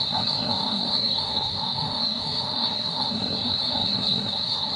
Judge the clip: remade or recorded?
remade